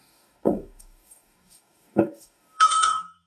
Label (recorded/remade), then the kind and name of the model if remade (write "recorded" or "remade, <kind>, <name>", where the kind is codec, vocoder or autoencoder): remade, codec, DAC